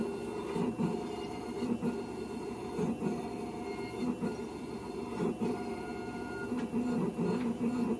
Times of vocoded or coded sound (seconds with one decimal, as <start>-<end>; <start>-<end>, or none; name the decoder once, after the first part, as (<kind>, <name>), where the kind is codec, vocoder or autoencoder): 2.6-3.3 (vocoder, Vocos)